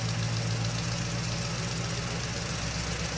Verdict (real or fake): real